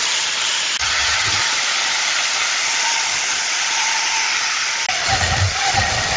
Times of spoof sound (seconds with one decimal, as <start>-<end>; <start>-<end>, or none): 0.8-1.4